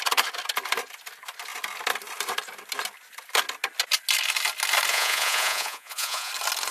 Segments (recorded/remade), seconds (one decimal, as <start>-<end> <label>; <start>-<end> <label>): 0.0-4.9 recorded; 4.9-6.3 remade; 6.3-6.7 recorded